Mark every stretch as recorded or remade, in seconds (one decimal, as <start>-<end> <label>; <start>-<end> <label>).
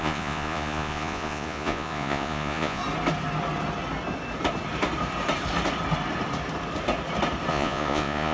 0.0-2.8 remade; 2.8-7.5 recorded; 7.5-8.3 remade